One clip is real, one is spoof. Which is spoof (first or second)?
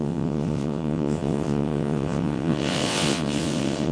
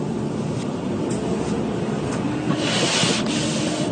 first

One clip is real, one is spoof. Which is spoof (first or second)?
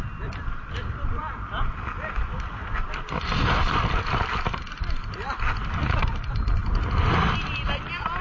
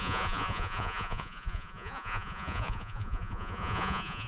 second